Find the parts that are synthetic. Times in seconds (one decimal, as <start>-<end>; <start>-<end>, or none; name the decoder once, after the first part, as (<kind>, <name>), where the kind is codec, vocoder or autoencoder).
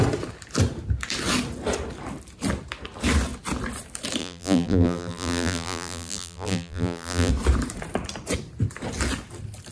4.2-7.3 (vocoder, BigVGAN v2)